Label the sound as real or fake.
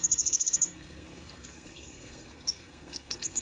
fake